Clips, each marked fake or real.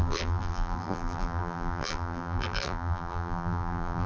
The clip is fake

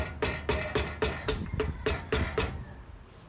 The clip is fake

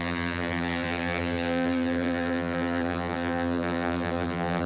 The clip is fake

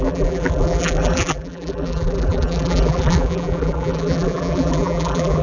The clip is fake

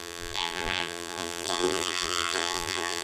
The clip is fake